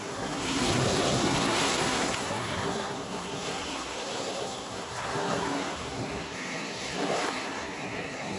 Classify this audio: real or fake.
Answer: fake